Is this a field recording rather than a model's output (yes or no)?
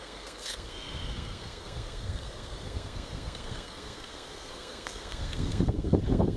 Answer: no